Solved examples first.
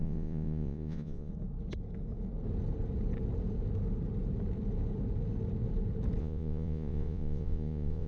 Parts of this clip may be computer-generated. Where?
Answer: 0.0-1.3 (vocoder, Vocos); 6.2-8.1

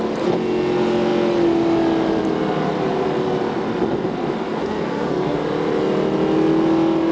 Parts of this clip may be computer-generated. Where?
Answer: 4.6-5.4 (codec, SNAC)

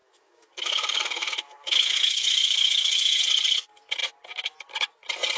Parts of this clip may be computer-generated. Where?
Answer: 0.0-3.2 (autoencoder, DAC-VAE)

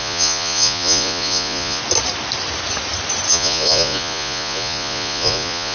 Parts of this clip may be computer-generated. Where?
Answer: 0.0-1.8 (vocoder, Vocos); 3.3-5.7

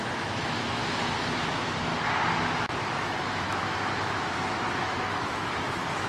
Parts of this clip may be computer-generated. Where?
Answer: 0.0-0.8 (autoencoder, DAC-VAE); 1.3-1.9; 2.8-6.1